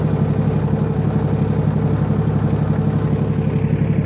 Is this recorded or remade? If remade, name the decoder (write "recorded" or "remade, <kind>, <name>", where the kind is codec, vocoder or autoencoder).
recorded